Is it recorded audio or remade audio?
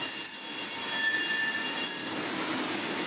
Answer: recorded